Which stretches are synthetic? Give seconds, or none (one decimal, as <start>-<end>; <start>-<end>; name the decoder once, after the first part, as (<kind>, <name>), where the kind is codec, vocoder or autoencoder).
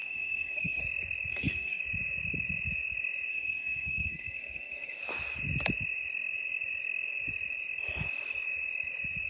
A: 0.0-0.8 (codec, SNAC); 1.3-1.8; 3.3-5.0